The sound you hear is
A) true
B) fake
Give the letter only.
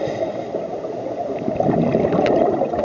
A